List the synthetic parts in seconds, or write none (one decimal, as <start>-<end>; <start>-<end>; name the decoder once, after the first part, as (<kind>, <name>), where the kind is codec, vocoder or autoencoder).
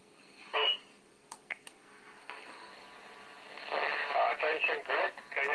0.0-2.7 (codec, SNAC)